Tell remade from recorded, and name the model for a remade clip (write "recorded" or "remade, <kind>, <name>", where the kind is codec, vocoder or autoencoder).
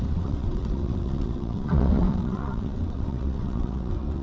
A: remade, vocoder, WaveNeXt